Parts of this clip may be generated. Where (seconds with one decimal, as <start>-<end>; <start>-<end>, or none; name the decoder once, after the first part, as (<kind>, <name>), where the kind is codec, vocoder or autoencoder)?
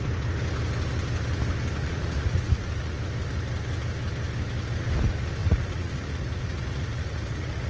1.8-3.0 (vocoder, Vocos); 5.4-7.7